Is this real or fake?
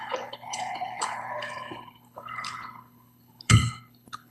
fake